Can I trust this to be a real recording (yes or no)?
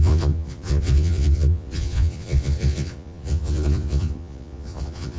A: no